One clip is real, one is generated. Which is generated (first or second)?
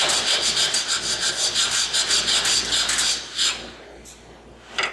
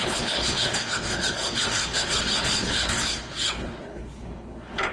second